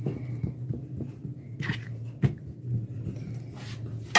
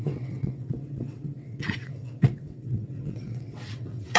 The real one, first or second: first